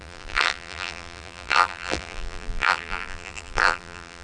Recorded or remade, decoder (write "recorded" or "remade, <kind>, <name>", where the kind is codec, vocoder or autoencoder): remade, vocoder, BigVGAN v2